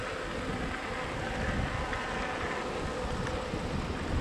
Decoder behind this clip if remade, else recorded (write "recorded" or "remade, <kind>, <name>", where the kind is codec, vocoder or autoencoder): recorded